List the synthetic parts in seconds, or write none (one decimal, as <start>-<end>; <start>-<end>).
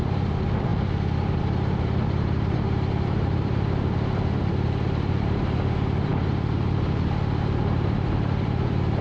0.0-9.0